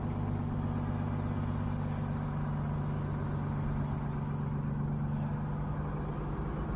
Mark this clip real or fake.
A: real